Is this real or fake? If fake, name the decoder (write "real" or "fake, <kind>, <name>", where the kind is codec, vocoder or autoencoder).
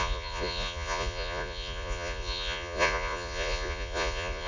fake, vocoder, Vocos